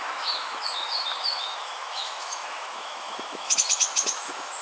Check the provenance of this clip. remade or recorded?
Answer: remade